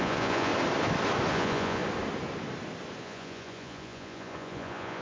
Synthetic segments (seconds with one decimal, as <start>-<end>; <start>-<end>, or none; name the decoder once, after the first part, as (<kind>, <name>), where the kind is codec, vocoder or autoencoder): 0.0-0.5 (vocoder, Vocos); 1.3-1.8; 3.0-5.0